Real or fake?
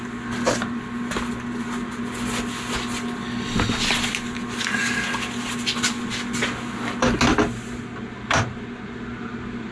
real